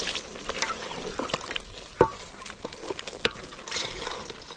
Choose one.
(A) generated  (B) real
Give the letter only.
B